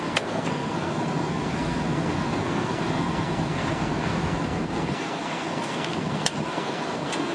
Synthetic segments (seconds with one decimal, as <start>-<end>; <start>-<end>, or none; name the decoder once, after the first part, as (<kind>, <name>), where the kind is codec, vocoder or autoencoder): 0.0-7.3 (codec, SNAC)